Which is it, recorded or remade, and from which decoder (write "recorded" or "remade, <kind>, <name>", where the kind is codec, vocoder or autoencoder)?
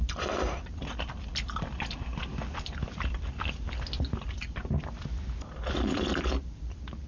remade, vocoder, BigVGAN v2